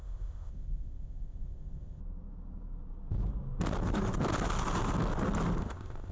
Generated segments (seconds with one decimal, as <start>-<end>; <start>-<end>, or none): 0.0-2.0; 5.6-6.1